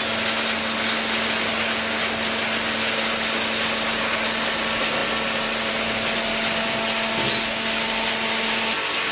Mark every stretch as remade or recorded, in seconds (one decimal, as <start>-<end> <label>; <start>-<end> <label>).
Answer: 0.0-9.1 recorded